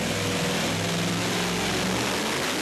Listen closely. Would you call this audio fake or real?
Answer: real